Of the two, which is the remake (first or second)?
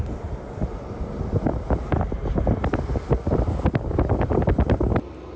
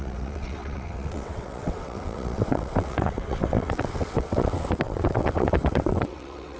second